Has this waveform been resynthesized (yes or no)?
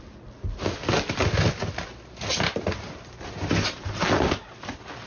no